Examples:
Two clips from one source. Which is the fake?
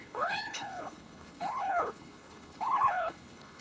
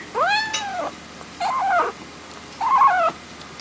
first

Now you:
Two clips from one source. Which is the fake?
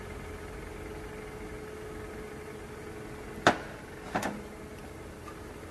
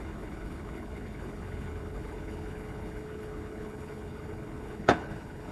second